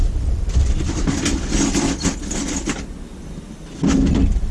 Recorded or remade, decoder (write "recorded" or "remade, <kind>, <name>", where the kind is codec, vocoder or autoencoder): recorded